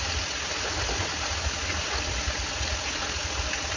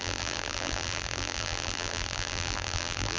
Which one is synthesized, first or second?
second